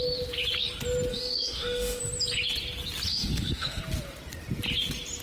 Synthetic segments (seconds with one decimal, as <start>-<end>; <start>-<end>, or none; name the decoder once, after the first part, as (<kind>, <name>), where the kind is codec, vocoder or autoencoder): 1.1-2.0 (autoencoder, DAC-VAE); 3.1-3.8